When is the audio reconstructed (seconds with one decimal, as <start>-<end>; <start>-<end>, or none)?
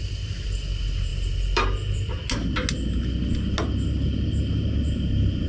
none